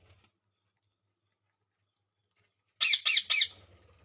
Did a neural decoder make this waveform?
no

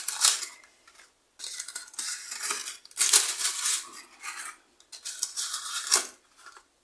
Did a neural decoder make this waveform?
no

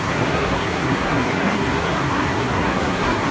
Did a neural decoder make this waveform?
yes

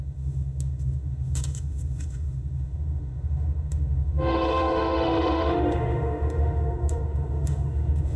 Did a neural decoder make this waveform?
yes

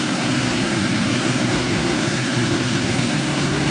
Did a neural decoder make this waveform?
yes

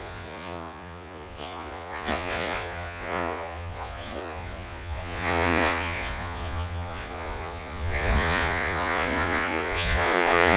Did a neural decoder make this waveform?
yes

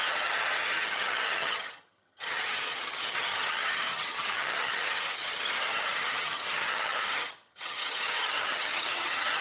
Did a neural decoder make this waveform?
yes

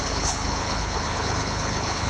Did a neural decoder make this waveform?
yes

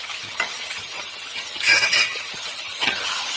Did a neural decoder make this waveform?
yes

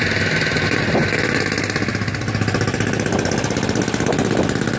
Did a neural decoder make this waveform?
no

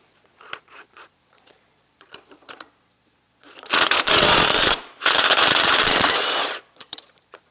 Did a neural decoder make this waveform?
yes